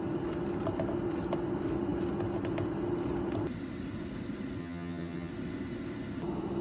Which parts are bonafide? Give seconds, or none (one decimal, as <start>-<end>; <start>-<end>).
0.0-4.6; 5.3-6.6